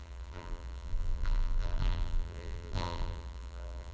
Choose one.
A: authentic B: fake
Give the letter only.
B